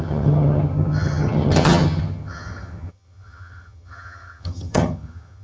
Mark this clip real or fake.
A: fake